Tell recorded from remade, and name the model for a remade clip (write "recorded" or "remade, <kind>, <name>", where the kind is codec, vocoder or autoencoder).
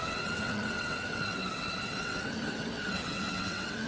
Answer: remade, vocoder, WaveNeXt